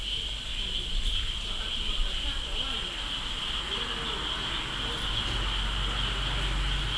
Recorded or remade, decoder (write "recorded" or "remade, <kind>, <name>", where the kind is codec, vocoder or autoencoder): recorded